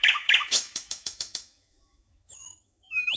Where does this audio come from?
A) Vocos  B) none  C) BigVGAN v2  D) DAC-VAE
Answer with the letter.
D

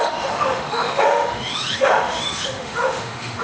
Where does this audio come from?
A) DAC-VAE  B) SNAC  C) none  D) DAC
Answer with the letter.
A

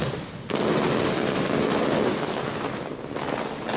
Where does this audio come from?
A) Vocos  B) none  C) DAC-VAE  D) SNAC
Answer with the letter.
B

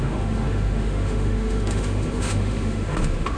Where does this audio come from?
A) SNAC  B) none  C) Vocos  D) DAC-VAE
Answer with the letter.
D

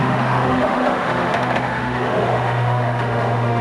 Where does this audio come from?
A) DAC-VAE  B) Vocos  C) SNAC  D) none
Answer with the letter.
A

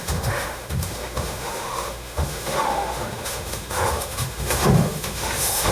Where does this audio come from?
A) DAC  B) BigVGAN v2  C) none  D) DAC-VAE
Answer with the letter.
D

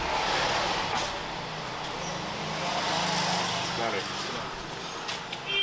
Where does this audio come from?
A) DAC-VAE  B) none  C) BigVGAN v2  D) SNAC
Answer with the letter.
B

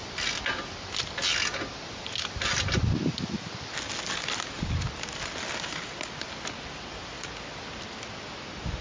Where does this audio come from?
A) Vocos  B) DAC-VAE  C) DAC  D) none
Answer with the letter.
D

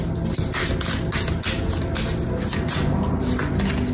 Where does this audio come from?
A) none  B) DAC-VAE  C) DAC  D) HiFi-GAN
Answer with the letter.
A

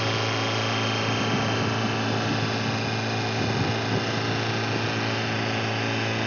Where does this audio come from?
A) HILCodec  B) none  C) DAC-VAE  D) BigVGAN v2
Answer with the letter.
B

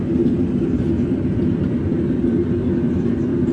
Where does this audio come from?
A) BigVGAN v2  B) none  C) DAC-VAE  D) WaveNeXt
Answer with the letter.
B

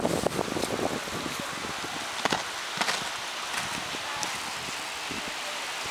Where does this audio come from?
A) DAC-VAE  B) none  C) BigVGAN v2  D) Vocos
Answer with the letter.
B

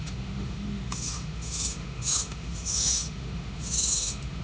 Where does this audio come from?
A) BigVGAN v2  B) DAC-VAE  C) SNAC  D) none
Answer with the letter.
B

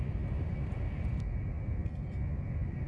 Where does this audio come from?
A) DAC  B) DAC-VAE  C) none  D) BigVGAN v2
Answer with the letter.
C